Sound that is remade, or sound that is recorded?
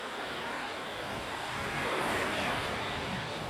remade